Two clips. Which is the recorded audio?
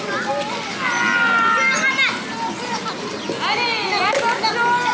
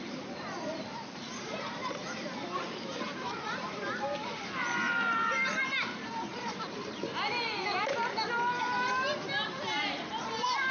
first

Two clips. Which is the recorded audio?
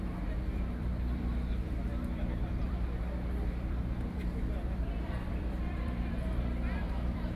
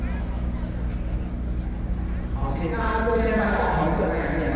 second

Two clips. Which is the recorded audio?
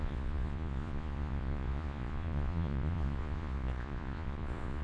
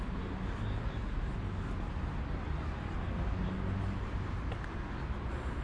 second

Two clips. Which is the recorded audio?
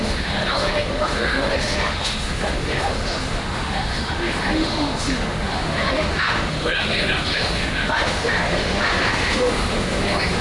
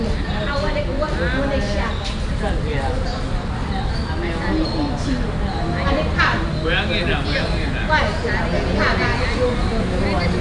second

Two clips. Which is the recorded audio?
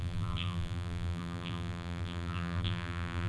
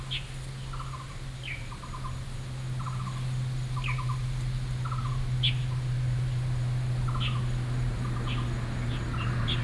second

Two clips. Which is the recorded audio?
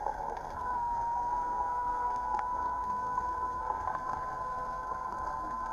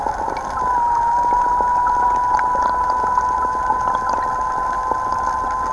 second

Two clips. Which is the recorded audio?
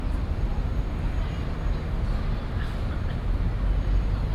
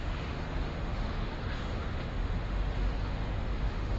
first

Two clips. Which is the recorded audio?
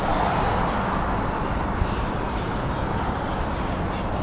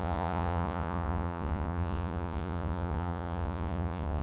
first